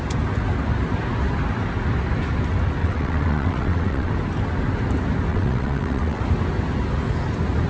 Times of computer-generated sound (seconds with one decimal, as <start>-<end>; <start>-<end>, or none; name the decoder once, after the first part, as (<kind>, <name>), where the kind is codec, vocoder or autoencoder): 2.8-4.1 (vocoder, WaveNeXt); 5.3-6.2

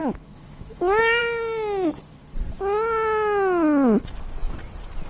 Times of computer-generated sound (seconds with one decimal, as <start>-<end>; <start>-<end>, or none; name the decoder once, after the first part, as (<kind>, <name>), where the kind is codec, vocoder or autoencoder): 0.0-1.2 (autoencoder, DAC-VAE)

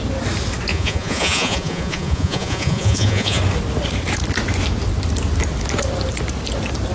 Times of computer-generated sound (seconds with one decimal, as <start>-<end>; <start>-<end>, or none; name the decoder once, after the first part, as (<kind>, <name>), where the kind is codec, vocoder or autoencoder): 0.7-3.4 (vocoder, Vocos)

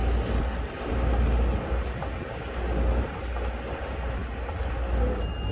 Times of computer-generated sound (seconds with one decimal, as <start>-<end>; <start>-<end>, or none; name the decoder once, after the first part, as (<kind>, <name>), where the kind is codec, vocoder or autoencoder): none

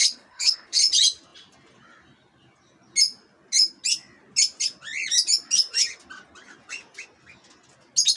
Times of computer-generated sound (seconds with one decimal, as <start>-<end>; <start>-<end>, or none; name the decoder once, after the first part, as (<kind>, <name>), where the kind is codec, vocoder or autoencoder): 0.0-0.8 (codec, HILCodec)

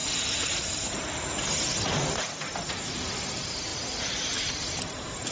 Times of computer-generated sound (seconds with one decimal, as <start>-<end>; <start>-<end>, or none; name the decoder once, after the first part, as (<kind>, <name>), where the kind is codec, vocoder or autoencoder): none